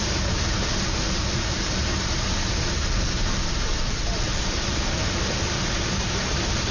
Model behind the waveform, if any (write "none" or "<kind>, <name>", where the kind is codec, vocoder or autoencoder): vocoder, BigVGAN v2